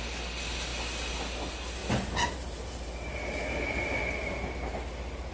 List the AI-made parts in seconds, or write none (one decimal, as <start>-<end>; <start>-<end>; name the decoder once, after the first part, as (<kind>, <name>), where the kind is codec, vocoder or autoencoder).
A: 1.8-4.7 (vocoder, BigVGAN v2)